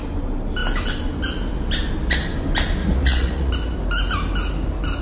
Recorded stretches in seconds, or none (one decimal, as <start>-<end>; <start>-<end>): 0.0-2.8; 3.5-5.0